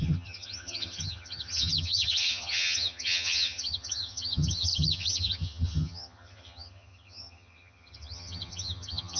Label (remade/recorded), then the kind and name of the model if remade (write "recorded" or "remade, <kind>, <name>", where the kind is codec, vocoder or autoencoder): remade, vocoder, HiFi-GAN